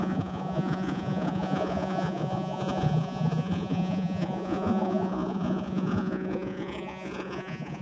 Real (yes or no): no